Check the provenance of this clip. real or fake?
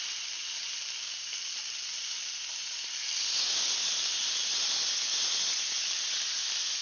real